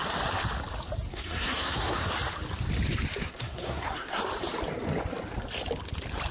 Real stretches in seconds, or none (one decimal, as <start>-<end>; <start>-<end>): 0.0-1.1; 2.1-3.2; 4.2-6.3